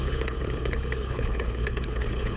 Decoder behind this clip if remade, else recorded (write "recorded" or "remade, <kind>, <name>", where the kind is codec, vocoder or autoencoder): remade, codec, HILCodec